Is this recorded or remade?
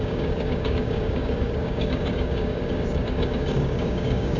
remade